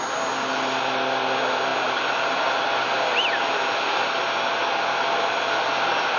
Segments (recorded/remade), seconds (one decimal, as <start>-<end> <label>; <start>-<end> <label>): 0.0-6.2 recorded